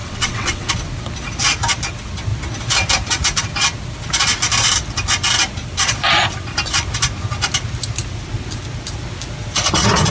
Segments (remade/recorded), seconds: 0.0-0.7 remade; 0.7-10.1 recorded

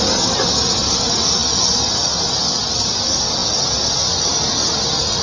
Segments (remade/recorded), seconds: 0.0-5.2 recorded

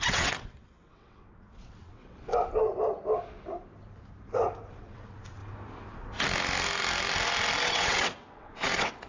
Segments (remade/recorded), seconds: 0.0-2.3 remade; 2.3-4.7 recorded; 4.7-5.4 remade; 5.4-7.6 recorded; 7.6-9.1 remade